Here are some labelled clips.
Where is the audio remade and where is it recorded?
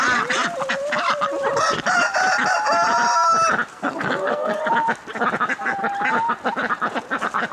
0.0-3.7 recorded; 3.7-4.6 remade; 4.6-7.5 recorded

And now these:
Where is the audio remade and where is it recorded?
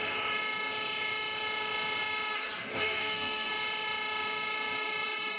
0.0-2.8 recorded; 2.8-3.5 remade; 3.5-5.4 recorded